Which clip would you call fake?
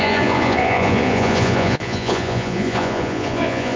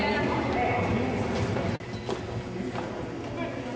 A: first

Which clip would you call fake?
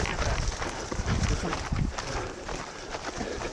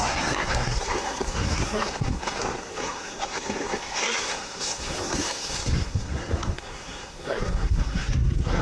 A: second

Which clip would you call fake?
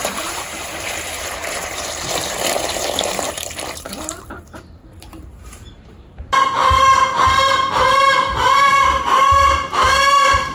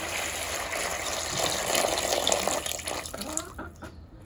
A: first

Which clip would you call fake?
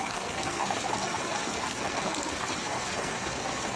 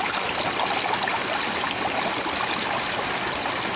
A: first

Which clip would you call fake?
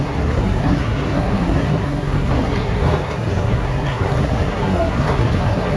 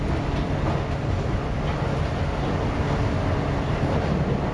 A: first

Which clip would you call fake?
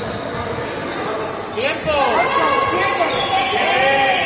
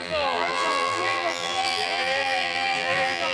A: second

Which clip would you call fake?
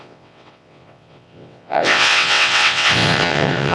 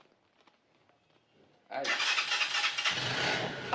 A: first